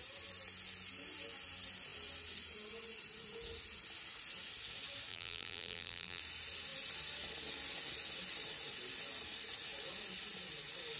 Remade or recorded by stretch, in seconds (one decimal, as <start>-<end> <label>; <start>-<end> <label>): 0.0-5.1 recorded; 5.1-6.2 remade; 6.2-11.0 recorded